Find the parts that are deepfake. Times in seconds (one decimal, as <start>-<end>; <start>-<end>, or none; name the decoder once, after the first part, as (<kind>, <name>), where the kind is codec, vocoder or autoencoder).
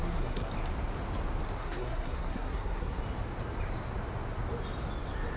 0.0-0.5 (codec, SNAC); 1.6-3.0